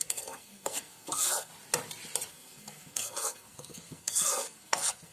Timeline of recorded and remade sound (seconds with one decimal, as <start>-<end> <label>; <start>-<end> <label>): 0.0-1.5 remade; 1.5-2.3 recorded; 2.3-5.1 remade